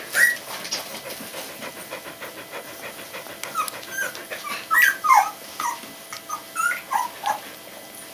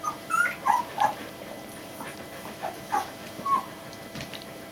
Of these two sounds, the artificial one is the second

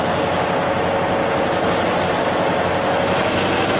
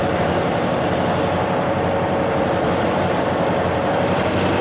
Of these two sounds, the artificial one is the second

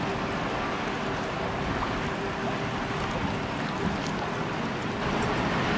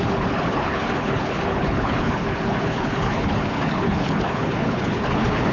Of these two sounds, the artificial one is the second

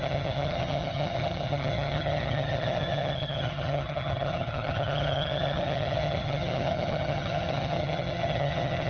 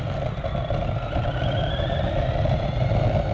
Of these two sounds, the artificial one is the first